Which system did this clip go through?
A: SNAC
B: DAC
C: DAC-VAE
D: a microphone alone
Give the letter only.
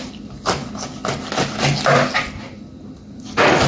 D